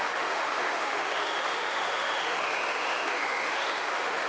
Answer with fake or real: fake